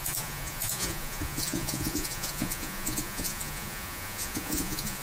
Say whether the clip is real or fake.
fake